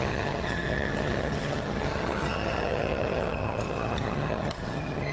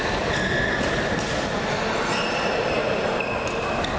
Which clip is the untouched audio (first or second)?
second